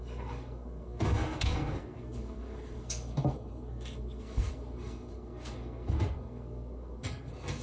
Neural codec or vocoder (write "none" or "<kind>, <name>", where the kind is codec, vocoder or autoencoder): codec, SNAC